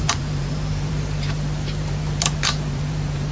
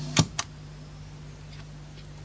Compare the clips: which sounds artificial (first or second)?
first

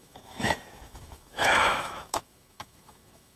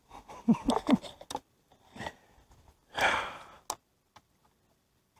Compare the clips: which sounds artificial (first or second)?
first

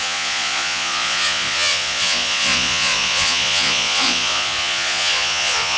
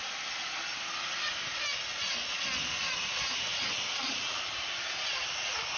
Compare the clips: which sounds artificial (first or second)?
first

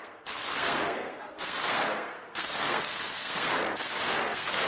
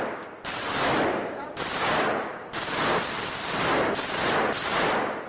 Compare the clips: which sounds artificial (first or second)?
first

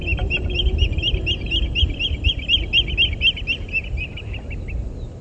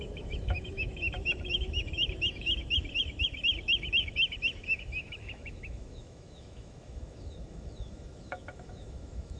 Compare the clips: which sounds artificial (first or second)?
second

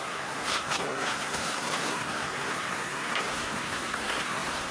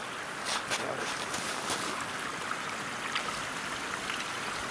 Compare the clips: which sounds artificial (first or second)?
first